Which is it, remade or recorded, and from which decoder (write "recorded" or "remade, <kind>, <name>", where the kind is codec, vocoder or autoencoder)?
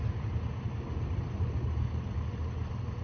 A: recorded